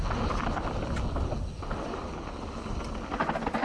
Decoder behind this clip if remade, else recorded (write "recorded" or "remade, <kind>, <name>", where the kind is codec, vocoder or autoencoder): recorded